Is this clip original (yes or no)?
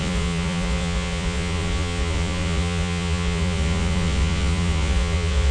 no